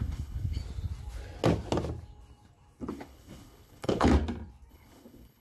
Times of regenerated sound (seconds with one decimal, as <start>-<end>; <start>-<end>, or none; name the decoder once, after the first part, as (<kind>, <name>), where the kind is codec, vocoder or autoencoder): 0.0-0.6 (codec, HILCodec); 2.9-4.1; 4.7-5.4